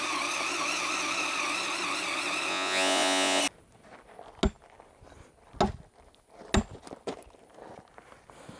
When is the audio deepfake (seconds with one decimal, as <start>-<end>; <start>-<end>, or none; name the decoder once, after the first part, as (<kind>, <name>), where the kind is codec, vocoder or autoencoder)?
2.5-3.4 (vocoder, Vocos)